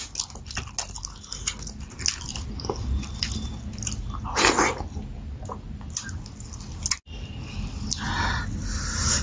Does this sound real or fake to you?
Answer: real